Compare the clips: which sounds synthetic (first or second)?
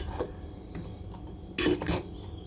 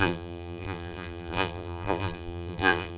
second